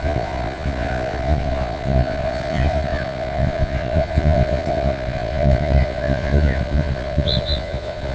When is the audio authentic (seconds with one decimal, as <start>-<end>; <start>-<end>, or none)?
none